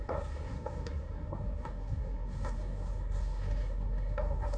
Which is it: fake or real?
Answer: fake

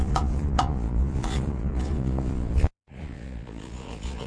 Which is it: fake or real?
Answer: fake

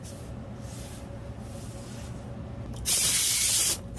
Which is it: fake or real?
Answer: real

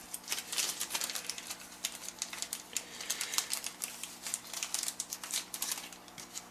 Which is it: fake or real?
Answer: real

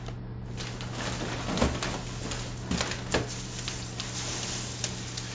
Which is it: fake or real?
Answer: real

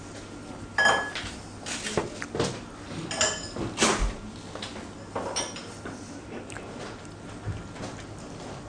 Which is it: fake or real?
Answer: real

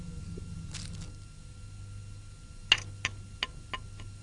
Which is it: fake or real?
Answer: real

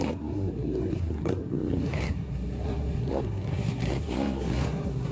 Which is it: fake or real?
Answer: fake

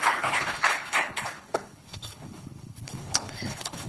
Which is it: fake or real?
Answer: fake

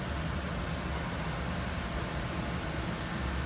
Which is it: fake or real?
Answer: real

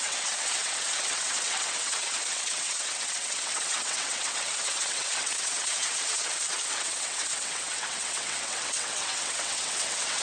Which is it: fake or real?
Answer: fake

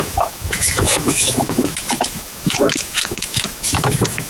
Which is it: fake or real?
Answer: fake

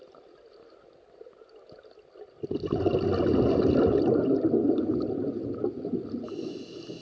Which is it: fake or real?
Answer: real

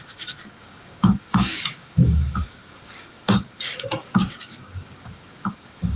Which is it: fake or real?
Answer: fake